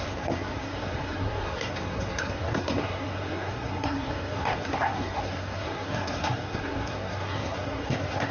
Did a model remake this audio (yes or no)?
yes